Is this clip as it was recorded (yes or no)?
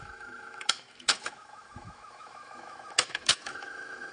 no